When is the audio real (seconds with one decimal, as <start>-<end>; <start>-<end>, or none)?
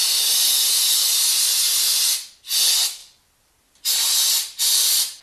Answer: 0.0-5.2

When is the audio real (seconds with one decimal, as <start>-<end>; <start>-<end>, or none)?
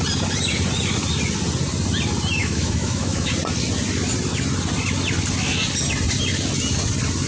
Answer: 0.0-2.4; 3.3-7.3